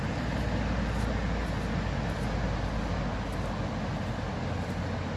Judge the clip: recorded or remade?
recorded